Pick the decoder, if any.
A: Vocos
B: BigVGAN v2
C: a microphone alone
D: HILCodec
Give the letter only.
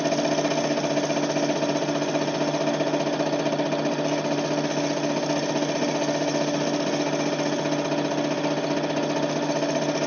C